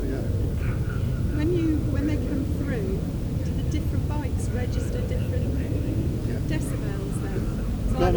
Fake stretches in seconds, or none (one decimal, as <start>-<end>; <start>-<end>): none